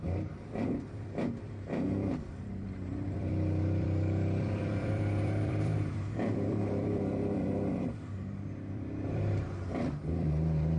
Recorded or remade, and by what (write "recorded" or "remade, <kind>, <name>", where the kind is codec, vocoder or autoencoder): remade, vocoder, BigVGAN v2